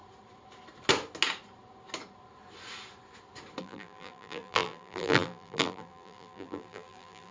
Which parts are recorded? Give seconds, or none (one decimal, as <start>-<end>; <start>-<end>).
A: 0.0-3.6